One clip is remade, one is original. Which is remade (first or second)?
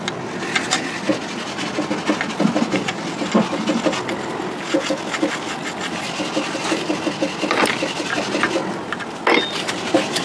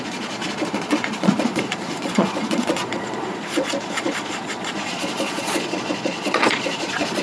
second